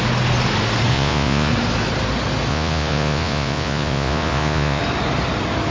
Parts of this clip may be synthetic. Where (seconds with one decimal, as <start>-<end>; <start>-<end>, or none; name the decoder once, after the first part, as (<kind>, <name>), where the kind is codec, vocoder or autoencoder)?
0.9-1.5 (vocoder, Vocos); 2.5-4.8